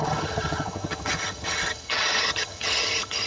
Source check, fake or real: fake